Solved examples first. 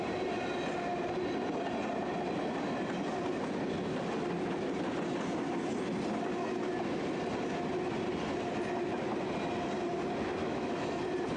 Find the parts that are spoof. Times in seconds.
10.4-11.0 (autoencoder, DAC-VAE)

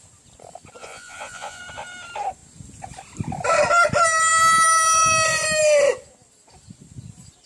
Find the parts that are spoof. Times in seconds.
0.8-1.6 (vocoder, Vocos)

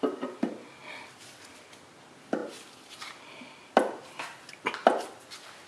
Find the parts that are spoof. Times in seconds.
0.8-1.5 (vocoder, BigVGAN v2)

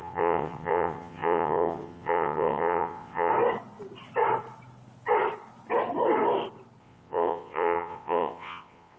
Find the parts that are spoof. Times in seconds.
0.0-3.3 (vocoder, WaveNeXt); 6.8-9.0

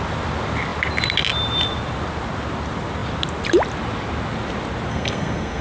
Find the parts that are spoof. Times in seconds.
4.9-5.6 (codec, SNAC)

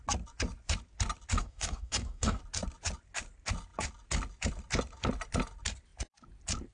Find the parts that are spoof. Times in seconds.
1.4-2.4 (codec, DAC)

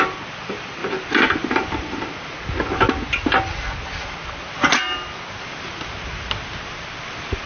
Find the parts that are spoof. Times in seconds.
none

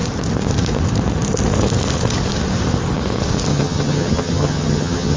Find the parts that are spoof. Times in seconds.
3.5-5.2 (vocoder, HiFi-GAN)